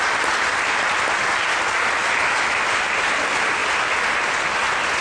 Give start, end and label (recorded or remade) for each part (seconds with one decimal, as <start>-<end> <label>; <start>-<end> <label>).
0.0-2.0 recorded; 2.0-2.7 remade; 2.7-5.0 recorded

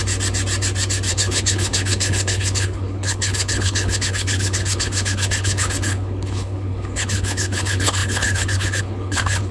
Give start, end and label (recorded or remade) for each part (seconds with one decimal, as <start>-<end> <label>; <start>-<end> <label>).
0.0-1.1 recorded; 1.1-9.5 remade